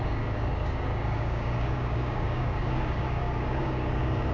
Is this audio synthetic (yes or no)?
yes